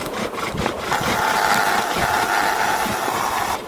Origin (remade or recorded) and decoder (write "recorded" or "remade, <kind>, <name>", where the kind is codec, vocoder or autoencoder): remade, vocoder, BigVGAN v2